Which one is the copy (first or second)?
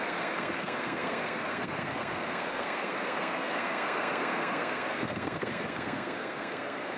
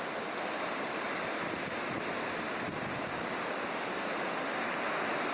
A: first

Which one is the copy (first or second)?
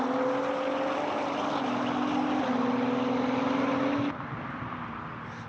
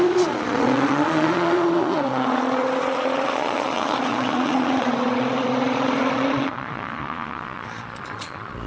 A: second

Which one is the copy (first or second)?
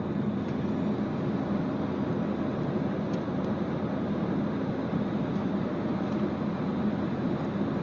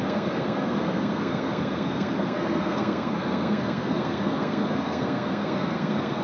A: second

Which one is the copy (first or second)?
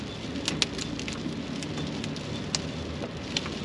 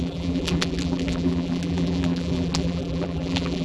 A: second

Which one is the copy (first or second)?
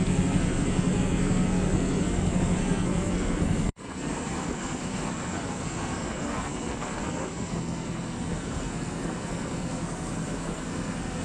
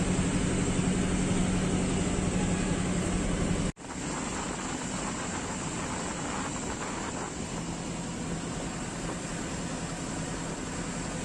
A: first